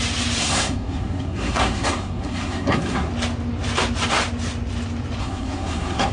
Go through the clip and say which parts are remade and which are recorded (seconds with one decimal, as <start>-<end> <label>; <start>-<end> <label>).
0.0-0.4 recorded; 0.4-3.1 remade; 3.1-5.2 recorded; 5.2-6.1 remade